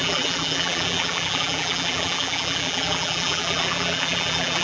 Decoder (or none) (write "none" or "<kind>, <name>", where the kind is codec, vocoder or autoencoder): vocoder, BigVGAN v2